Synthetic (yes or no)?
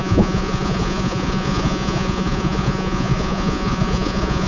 yes